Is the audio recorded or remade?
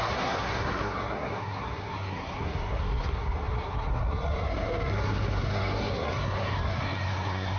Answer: remade